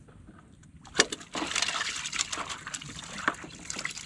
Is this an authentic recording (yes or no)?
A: yes